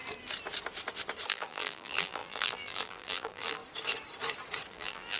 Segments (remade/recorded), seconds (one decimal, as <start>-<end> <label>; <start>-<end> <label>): 0.0-1.3 recorded; 1.3-3.6 remade; 3.6-4.7 recorded; 4.7-5.2 remade